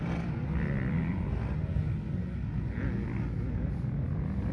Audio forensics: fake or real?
real